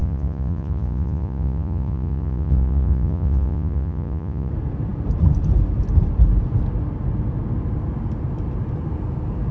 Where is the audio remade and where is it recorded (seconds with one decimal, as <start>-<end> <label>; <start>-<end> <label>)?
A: 0.0-4.5 remade; 4.5-9.5 recorded